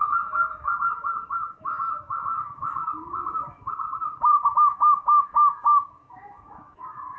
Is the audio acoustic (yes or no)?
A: no